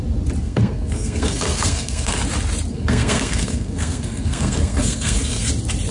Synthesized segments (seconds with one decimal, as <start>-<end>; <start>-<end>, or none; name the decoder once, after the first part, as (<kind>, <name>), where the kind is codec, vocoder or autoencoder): 0.4-2.2 (codec, SNAC); 2.7-5.5